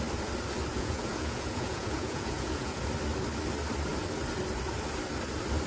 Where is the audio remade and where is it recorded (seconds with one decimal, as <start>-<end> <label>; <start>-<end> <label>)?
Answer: 0.0-0.7 recorded; 0.7-2.8 remade; 2.8-5.7 recorded